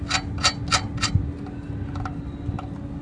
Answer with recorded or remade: recorded